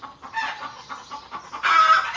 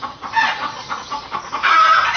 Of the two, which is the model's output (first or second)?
second